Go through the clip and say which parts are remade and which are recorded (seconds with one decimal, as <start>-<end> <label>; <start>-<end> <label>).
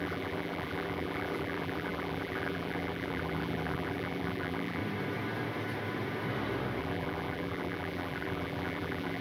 0.0-4.8 remade; 4.8-6.8 recorded; 6.8-9.2 remade